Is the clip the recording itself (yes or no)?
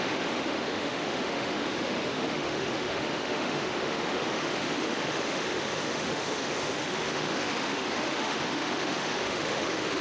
no